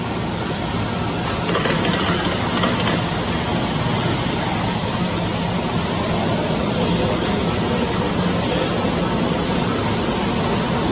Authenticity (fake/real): real